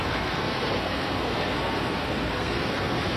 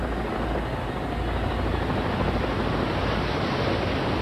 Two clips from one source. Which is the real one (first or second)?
second